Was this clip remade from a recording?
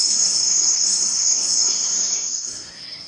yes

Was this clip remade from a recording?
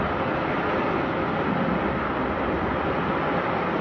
no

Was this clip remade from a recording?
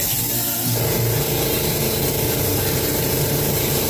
no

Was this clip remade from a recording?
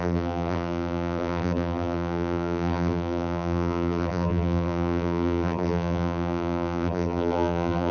yes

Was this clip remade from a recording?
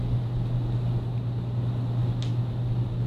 no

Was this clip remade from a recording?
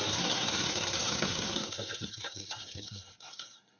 yes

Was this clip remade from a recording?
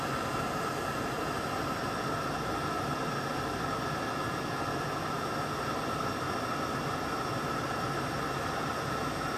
no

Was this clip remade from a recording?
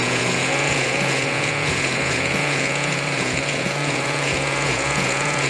yes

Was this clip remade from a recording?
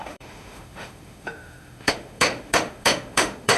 yes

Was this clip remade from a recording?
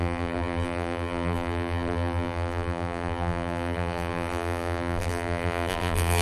yes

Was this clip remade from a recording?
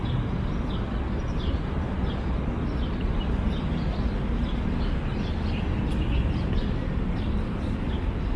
no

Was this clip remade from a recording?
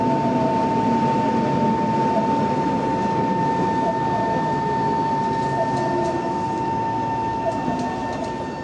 no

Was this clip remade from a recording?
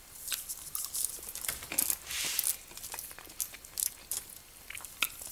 no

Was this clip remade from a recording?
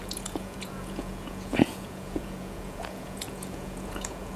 yes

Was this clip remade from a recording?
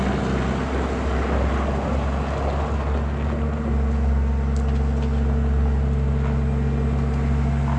no